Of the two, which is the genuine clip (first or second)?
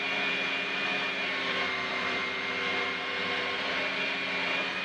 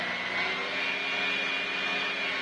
second